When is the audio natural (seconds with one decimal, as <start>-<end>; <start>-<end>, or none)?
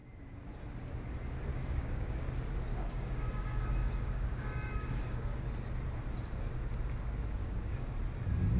0.0-1.5; 2.1-2.7; 5.4-7.4; 7.9-8.6